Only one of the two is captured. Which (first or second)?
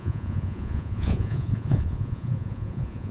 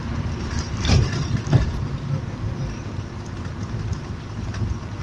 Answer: second